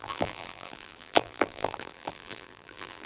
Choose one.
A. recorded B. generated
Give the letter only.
B